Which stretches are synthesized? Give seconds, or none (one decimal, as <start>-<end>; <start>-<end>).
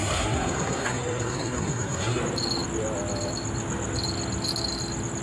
0.0-2.2